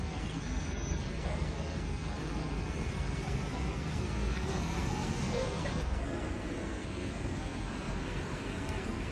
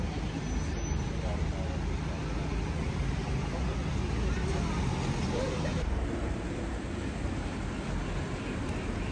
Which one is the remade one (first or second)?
first